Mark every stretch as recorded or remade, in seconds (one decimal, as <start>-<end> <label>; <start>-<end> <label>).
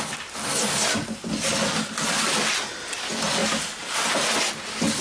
0.0-5.0 recorded